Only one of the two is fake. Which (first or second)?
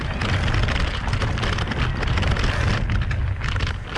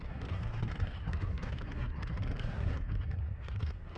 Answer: second